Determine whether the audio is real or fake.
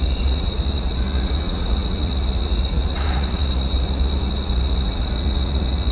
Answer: fake